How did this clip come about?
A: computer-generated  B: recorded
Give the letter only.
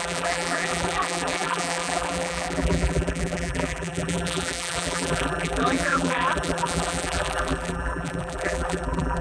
A